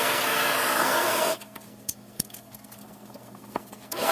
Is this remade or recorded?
remade